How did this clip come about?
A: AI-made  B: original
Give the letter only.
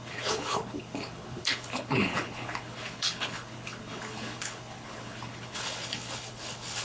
A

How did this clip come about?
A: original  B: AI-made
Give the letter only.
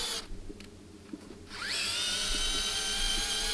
A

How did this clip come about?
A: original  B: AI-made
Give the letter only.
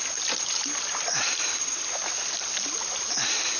A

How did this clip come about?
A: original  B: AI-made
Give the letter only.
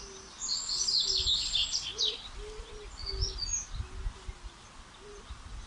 A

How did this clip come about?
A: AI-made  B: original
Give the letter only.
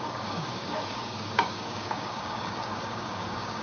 A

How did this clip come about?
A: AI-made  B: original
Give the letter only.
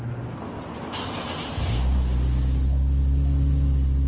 B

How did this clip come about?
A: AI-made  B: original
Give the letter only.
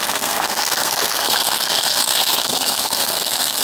A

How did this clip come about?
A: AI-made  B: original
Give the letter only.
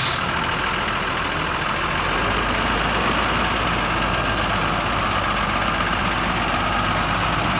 B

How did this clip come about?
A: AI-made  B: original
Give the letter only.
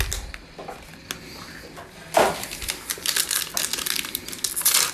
B